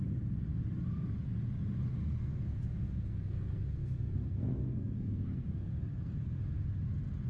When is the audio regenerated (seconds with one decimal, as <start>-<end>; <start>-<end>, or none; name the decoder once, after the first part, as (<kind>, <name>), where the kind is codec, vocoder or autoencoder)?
2.0-6.4 (codec, SNAC)

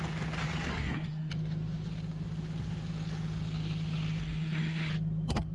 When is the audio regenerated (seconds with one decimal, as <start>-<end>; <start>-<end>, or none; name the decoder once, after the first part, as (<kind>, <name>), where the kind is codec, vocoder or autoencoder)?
0.7-1.3 (codec, SNAC); 4.2-4.9

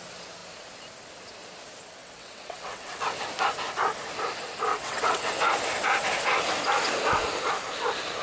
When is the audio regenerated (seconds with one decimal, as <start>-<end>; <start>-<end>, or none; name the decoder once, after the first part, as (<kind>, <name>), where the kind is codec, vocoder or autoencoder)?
2.0-3.0 (vocoder, WaveNeXt); 4.7-5.3